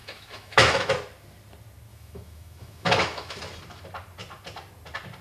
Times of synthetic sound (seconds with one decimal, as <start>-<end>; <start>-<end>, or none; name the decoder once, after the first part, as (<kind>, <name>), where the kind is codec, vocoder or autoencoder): 0.0-0.9 (autoencoder, DAC-VAE); 1.9-3.4